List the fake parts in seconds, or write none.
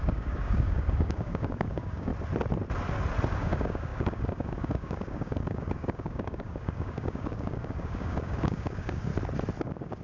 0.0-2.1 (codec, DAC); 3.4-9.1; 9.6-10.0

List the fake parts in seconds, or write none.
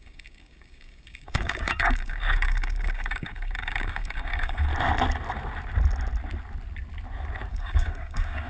0.0-4.7 (codec, DAC); 7.5-8.5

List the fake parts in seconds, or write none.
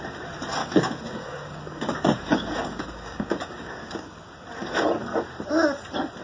0.6-4.3 (codec, DAC)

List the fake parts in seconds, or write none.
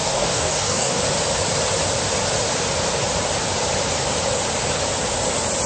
0.0-1.0 (codec, DAC)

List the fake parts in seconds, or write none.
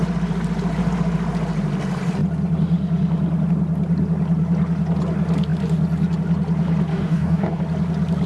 6.9-7.6 (codec, DAC)